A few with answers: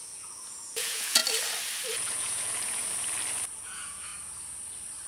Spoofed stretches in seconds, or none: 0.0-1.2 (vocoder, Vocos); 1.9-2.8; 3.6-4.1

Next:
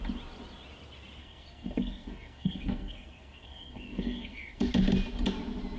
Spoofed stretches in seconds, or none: 1.2-4.7 (codec, SNAC)

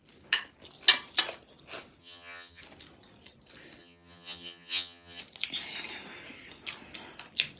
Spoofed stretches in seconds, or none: 2.0-2.6 (vocoder, HiFi-GAN); 3.8-5.2

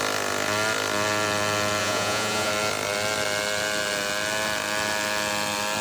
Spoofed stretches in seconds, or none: 1.8-2.5 (vocoder, Vocos)